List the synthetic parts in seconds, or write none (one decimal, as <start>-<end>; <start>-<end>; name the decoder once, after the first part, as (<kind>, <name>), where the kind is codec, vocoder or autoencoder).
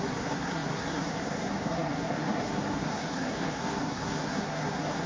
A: 0.0-5.1 (codec, SNAC)